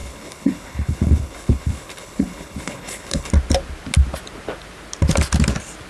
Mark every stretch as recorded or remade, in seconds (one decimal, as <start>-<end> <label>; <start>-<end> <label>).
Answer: 0.0-3.3 remade; 3.3-5.9 recorded